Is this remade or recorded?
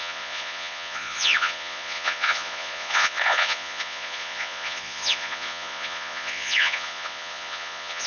remade